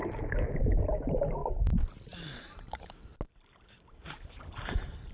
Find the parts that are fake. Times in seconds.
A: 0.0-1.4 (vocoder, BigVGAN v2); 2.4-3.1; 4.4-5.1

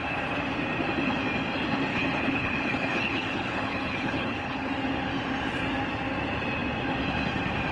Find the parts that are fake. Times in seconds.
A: 1.9-4.7 (codec, HILCodec)

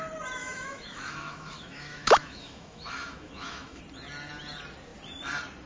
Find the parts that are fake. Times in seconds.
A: 0.4-3.8 (autoencoder, DAC-VAE)

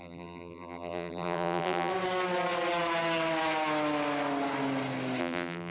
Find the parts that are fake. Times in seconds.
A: 0.0-1.9 (vocoder, BigVGAN v2); 5.2-5.7